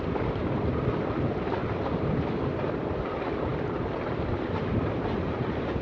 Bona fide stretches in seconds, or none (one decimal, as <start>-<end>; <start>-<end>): 0.0-5.8